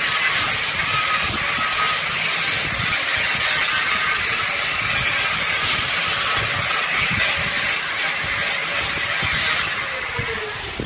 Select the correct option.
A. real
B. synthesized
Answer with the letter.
A